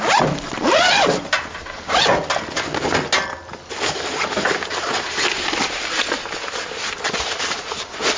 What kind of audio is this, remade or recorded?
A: recorded